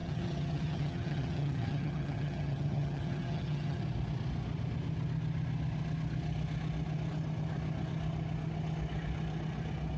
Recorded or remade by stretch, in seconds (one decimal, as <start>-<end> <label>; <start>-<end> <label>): 0.0-3.8 remade; 3.8-10.0 recorded